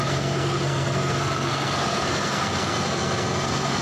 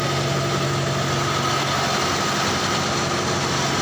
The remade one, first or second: first